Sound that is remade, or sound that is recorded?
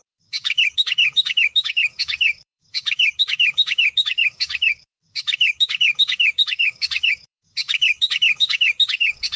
remade